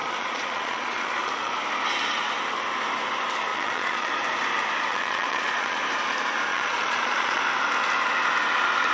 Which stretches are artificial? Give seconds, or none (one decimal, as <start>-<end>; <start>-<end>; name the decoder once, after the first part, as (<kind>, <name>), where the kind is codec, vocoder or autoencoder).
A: 0.0-1.5 (vocoder, Vocos); 3.5-4.1; 4.9-5.8; 6.5-7.4